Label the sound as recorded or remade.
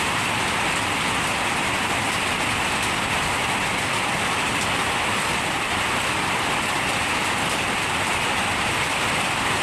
recorded